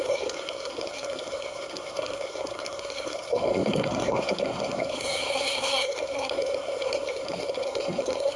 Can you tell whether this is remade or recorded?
remade